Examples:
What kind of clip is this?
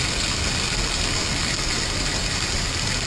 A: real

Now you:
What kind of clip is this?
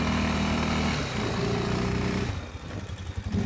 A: real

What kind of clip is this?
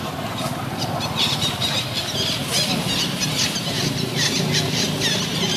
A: real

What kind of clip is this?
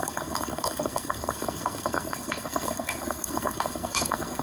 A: fake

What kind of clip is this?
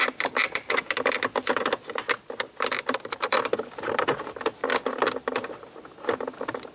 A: real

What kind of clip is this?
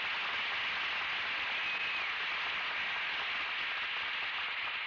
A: real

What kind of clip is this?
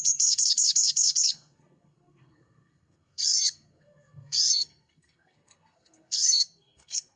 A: fake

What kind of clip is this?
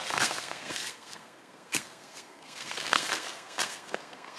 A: fake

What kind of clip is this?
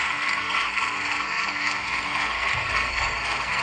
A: fake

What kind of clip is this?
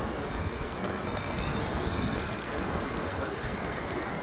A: fake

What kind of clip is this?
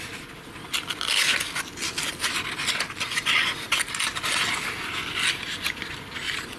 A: real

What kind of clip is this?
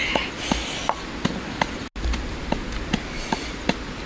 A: real